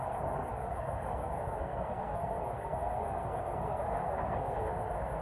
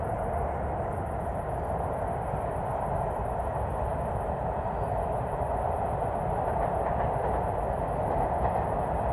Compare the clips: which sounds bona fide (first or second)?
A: second